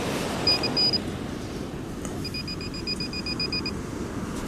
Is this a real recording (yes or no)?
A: yes